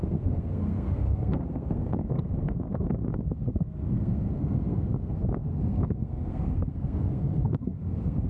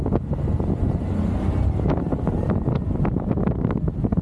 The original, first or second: second